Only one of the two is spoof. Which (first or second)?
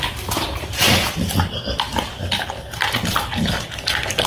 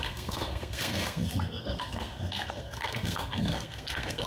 second